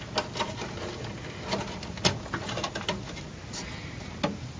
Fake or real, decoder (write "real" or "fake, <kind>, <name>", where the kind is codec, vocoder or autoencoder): real